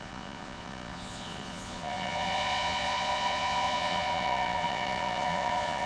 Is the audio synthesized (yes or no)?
yes